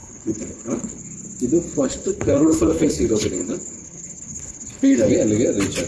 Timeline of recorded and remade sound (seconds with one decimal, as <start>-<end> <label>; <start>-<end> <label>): 0.0-1.0 remade; 1.0-1.7 recorded; 1.7-5.1 remade; 5.1-5.9 recorded